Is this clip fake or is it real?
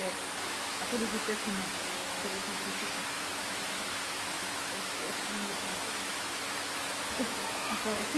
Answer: fake